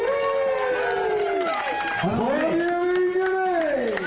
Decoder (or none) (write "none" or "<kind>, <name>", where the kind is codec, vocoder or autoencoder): none